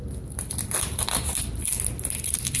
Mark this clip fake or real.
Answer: real